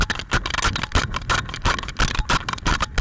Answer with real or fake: real